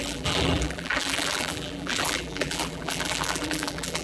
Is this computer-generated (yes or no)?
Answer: yes